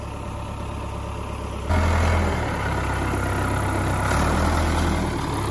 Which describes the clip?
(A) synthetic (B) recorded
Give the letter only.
B